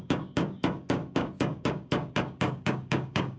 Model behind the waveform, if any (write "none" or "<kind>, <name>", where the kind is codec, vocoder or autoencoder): codec, DAC